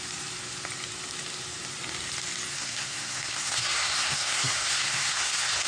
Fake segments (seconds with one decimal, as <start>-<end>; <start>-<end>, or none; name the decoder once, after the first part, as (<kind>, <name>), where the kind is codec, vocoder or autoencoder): 2.5-5.7 (codec, SNAC)